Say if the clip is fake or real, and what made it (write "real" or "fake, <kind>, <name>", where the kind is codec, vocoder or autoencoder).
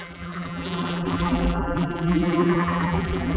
fake, vocoder, BigVGAN v2